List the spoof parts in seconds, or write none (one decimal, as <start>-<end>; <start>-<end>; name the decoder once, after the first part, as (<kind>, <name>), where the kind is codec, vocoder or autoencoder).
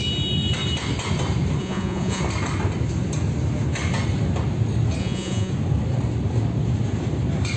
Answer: 1.6-2.2 (vocoder, Vocos); 5.0-5.5